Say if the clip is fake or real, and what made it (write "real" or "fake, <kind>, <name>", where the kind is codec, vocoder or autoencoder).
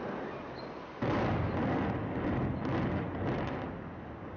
real